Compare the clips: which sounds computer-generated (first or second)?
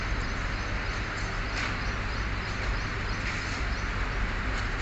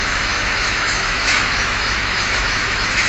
second